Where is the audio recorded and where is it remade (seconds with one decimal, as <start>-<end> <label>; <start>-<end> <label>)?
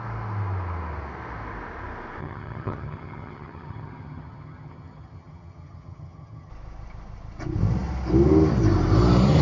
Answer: 0.0-2.2 recorded; 2.2-6.5 remade; 6.5-9.4 recorded